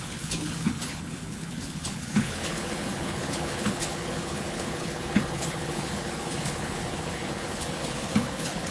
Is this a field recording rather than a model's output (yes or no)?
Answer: no